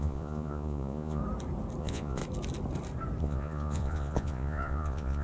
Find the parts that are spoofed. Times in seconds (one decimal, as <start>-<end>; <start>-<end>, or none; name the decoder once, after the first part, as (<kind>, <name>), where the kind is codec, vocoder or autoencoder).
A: 0.0-1.2 (vocoder, Vocos); 1.8-2.2; 3.2-5.2